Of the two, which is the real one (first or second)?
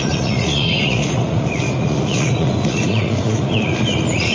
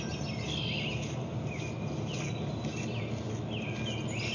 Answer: second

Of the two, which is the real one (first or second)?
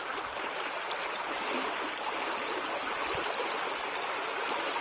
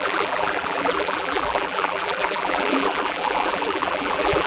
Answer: first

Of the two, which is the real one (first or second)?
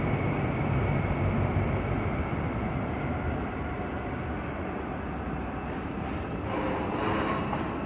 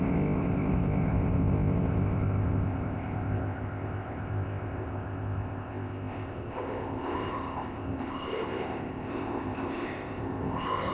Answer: first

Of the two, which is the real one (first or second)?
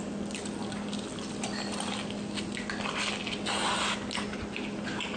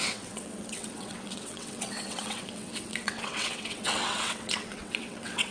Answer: first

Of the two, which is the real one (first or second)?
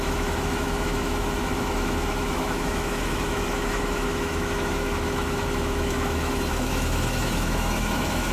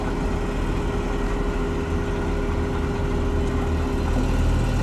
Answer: second